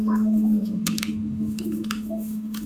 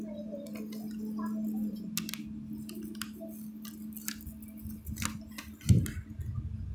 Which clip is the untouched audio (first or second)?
second